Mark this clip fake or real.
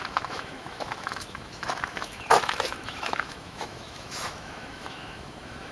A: fake